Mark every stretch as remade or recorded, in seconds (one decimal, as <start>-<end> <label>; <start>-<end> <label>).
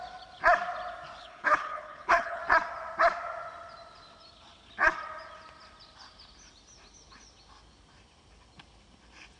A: 0.0-1.2 recorded; 1.2-2.4 remade; 2.4-9.4 recorded